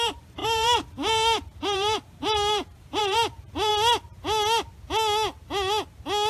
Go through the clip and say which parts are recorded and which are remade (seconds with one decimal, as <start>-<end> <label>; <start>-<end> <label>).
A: 0.0-3.7 remade; 3.7-6.3 recorded